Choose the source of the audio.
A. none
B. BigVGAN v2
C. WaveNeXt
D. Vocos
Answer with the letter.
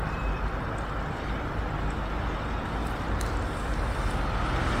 A